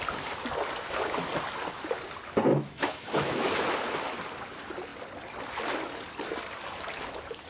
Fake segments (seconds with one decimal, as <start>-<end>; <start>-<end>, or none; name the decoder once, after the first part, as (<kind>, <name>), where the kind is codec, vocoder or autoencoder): 2.5-3.6 (autoencoder, DAC-VAE)